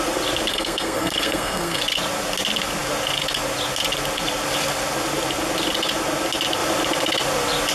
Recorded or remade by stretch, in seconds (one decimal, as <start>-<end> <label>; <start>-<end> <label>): 0.0-0.5 recorded; 0.5-1.8 remade; 1.8-7.7 recorded